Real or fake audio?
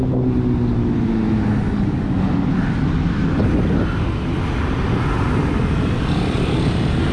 real